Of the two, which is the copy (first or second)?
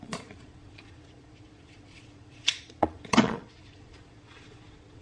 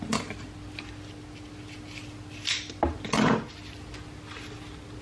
first